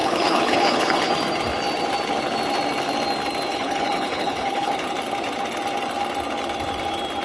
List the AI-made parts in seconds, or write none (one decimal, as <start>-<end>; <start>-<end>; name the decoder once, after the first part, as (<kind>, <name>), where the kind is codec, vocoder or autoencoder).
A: 0.0-1.1 (codec, HILCodec); 3.5-4.7